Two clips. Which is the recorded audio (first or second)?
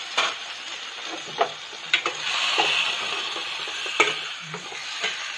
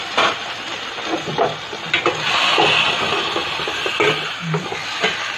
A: second